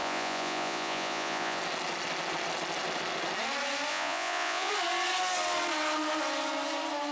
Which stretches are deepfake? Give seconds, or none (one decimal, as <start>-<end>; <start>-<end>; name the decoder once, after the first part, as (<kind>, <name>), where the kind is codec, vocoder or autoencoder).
0.0-1.6 (vocoder, Vocos); 3.9-4.7